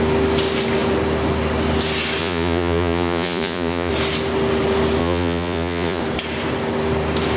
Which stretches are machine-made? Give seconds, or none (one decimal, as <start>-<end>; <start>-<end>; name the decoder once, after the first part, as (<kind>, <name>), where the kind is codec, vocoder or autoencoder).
2.2-3.9 (vocoder, Vocos); 5.0-6.0